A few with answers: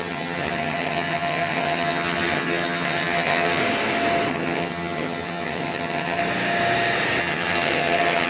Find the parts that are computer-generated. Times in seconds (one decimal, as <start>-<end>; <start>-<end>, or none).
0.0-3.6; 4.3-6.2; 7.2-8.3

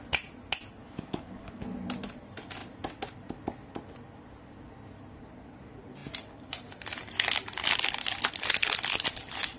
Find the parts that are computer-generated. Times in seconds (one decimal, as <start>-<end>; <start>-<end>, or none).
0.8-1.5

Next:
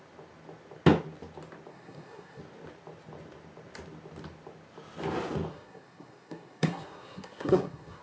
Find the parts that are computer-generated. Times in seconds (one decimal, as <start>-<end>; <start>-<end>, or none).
1.7-2.4; 5.5-8.0